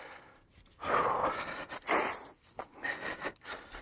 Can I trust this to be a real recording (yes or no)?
yes